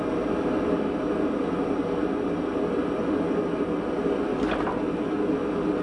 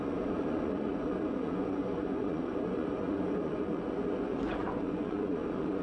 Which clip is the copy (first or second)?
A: second